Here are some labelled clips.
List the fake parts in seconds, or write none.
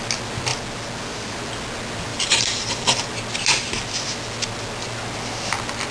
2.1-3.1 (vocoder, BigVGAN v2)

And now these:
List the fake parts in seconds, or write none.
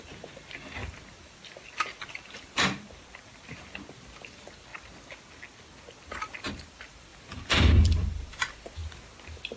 0.0-4.7 (vocoder, BigVGAN v2); 6.5-8.8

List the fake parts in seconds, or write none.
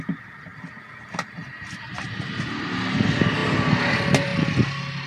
0.0-0.5 (vocoder, BigVGAN v2); 1.3-3.4; 3.9-4.3